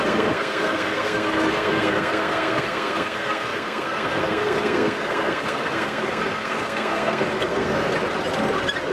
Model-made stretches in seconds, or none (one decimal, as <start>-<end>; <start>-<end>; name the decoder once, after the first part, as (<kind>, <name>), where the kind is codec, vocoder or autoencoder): 0.0-7.9 (codec, SNAC)